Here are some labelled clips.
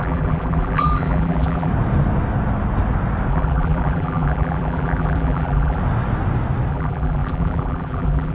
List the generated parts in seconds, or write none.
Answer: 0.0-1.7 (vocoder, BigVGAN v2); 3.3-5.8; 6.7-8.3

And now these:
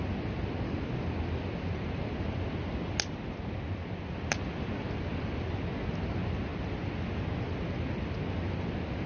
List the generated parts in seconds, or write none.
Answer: none

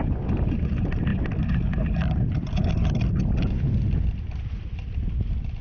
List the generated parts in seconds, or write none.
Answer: 1.1-3.2 (vocoder, BigVGAN v2)

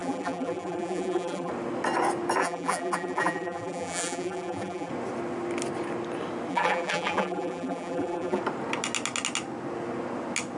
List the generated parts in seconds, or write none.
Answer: 0.0-1.5 (vocoder, BigVGAN v2); 2.4-4.9; 6.5-8.4